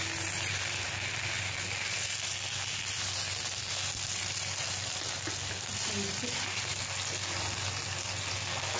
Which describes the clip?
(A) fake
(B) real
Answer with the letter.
B